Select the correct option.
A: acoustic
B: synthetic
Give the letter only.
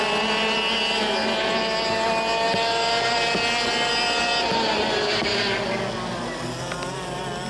A